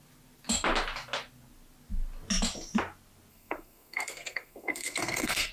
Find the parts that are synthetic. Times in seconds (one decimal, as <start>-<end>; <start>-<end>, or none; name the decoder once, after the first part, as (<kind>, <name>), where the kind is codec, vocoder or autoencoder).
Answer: 3.3-5.5 (codec, SNAC)